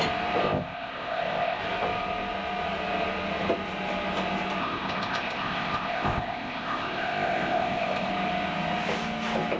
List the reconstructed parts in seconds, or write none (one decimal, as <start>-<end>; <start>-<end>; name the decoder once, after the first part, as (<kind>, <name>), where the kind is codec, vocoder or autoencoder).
0.4-1.6 (codec, ZipCodec); 4.6-8.1